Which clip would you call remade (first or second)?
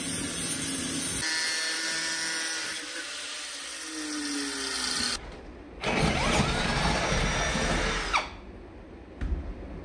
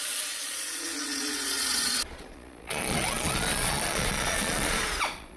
second